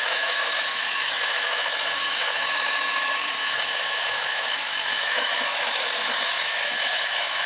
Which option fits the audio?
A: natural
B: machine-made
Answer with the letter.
B